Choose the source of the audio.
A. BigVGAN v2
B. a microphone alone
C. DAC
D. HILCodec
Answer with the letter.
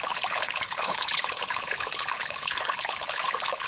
D